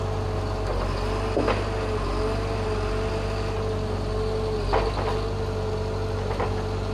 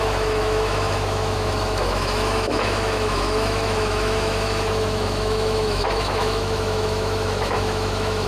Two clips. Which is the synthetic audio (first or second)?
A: second